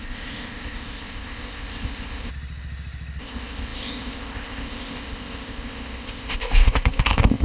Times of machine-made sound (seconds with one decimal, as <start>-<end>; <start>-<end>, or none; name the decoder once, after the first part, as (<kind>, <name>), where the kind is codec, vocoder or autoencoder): 0.0-2.3 (codec, ZipCodec); 3.2-7.4